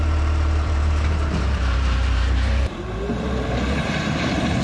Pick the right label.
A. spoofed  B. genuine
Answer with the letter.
A